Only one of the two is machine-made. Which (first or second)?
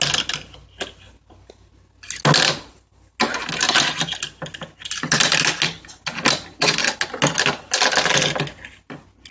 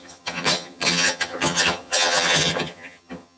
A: second